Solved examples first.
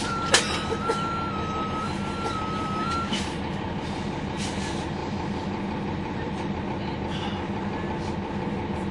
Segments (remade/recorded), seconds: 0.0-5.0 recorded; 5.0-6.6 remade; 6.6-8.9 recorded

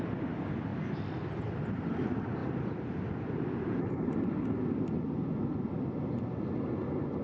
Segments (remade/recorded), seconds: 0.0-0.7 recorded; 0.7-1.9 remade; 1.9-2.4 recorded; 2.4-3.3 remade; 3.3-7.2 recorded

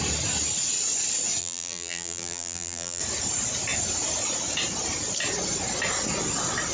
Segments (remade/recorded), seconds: 0.0-1.4 recorded; 1.4-3.0 remade; 3.0-6.7 recorded

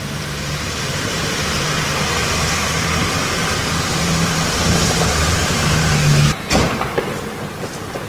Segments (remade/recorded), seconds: 0.0-2.2 remade; 2.2-3.3 recorded; 3.3-8.1 remade